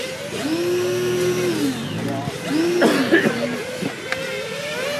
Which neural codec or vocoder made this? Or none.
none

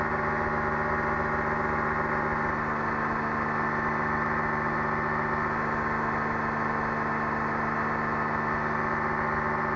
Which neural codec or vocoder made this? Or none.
none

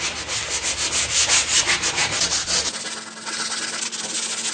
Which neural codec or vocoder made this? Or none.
none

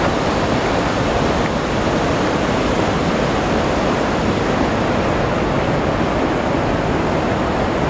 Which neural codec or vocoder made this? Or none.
none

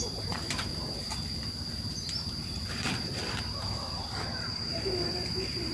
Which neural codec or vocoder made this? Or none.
vocoder, BigVGAN v2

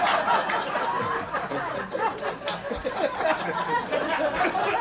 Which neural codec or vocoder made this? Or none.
none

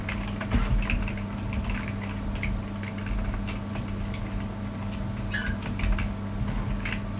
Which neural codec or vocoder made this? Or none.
none